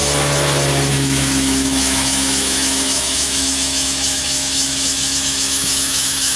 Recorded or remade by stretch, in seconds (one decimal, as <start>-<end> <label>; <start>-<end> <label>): 0.0-0.9 recorded; 0.9-6.4 remade